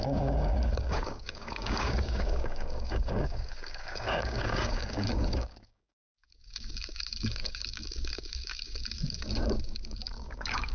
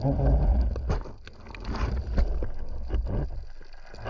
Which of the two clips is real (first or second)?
second